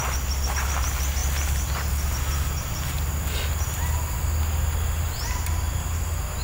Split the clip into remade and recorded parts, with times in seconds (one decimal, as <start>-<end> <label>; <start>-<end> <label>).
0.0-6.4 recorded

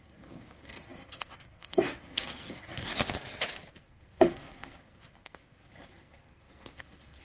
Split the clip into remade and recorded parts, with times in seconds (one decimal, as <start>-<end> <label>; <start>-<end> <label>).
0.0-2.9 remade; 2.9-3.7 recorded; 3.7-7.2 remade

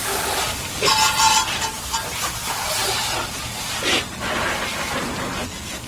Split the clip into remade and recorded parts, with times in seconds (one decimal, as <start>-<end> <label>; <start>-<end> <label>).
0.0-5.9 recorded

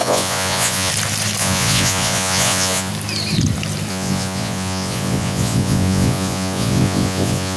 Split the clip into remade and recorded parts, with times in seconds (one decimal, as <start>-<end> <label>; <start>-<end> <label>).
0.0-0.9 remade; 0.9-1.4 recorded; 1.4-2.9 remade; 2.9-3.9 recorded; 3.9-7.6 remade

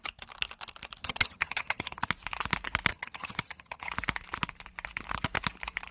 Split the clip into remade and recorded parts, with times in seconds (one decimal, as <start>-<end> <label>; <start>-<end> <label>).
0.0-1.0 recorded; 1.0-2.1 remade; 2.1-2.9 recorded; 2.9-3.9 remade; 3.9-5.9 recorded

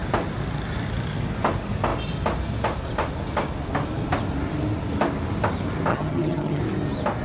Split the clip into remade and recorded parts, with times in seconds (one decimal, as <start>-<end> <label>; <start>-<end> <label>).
0.0-5.9 recorded; 5.9-6.6 remade; 6.6-7.2 recorded

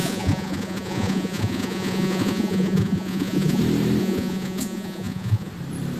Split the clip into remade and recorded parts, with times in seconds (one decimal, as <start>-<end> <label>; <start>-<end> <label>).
0.0-3.6 remade; 3.6-4.0 recorded; 4.0-5.5 remade; 5.5-6.0 recorded